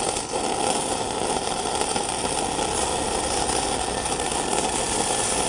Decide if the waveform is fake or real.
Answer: real